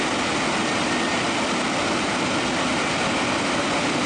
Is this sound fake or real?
real